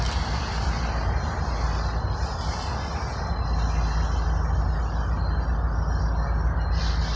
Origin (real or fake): real